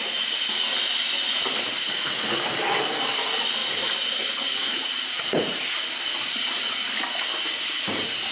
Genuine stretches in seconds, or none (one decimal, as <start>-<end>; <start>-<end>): 0.0-3.6; 5.7-8.3